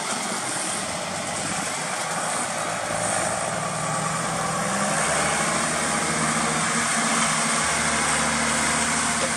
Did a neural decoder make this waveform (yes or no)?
no